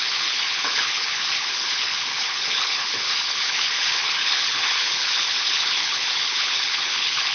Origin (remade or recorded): remade